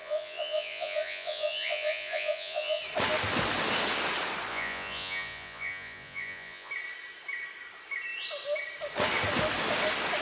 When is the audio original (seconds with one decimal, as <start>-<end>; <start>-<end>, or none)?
2.8-4.5; 6.7-10.2